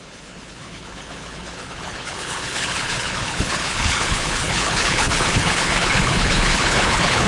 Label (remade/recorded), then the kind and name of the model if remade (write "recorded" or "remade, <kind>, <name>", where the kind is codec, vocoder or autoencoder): remade, codec, HILCodec